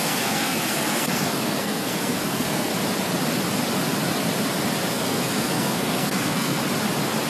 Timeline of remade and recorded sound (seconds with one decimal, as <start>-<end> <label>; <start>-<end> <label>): 0.0-2.7 remade; 2.7-4.9 recorded; 4.9-6.6 remade; 6.6-7.3 recorded